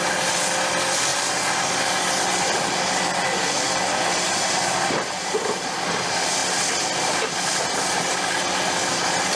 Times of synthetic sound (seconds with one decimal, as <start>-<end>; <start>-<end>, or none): none